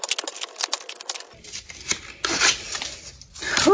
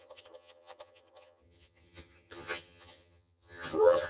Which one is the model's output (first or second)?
second